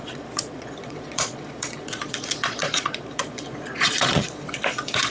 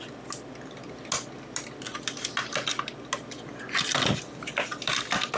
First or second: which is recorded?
second